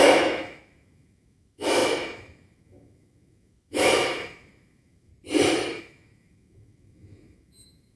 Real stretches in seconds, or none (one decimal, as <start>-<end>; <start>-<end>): 5.1-5.8